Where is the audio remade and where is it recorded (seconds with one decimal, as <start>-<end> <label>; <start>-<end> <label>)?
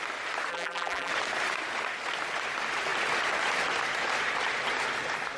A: 0.0-0.5 recorded; 0.5-1.1 remade; 1.1-5.4 recorded